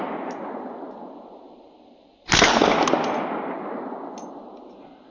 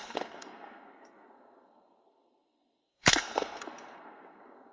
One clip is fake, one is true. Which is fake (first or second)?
second